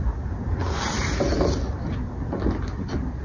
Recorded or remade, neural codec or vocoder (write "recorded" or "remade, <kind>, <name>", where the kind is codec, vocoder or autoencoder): recorded